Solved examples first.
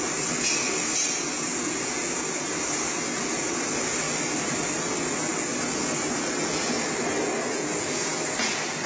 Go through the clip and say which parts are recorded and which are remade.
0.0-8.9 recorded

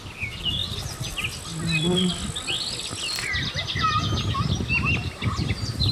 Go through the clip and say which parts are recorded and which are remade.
0.0-5.9 recorded

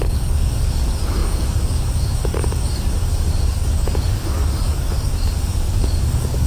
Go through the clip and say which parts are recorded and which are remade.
0.0-6.5 remade

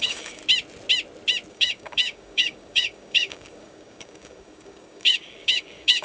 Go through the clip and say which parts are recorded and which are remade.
0.0-0.4 remade; 0.4-1.5 recorded; 1.5-6.0 remade